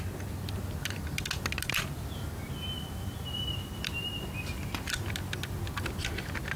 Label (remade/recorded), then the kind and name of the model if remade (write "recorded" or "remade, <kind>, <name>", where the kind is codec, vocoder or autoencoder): recorded